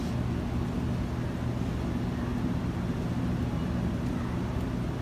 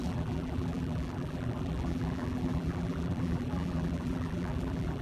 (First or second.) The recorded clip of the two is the first